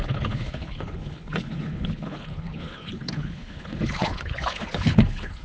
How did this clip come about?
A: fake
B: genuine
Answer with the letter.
A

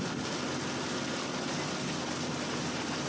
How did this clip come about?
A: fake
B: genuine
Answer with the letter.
B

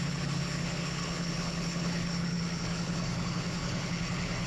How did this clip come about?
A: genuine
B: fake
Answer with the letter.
B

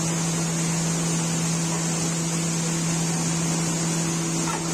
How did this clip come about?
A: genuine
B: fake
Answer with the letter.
A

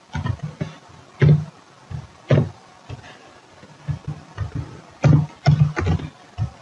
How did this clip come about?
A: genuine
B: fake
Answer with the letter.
A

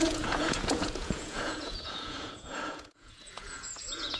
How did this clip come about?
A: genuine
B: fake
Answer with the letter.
B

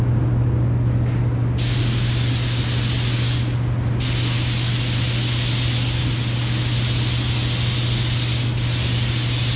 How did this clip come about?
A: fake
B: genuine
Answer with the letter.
B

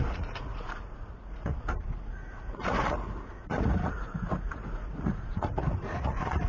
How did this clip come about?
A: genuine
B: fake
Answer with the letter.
B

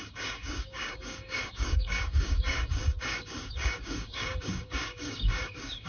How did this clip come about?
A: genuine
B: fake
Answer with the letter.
B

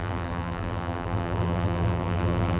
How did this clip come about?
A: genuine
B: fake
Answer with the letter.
B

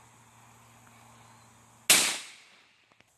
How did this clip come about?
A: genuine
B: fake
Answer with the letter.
A